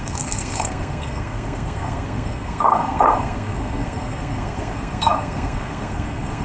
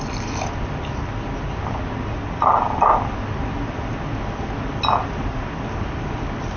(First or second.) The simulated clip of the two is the first